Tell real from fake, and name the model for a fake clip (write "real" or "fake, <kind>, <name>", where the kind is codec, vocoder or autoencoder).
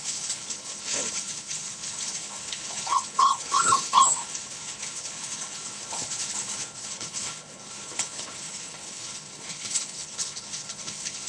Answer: fake, codec, HILCodec